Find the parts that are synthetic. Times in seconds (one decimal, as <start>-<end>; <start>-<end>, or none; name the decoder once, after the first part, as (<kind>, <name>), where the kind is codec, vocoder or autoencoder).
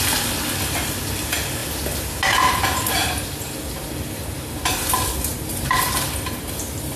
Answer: 5.3-5.9 (vocoder, BigVGAN v2)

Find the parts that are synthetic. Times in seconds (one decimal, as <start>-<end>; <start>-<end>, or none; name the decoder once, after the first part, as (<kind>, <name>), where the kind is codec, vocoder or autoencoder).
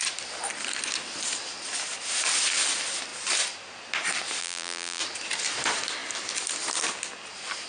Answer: 4.4-5.0 (vocoder, BigVGAN v2)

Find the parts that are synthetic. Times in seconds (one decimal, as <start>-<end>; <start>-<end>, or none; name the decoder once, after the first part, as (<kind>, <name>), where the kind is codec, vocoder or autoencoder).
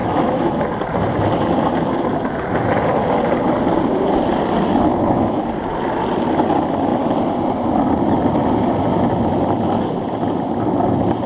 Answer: 0.0-0.6 (autoencoder, DAC-VAE); 4.9-5.4